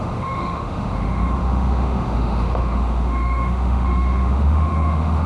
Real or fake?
fake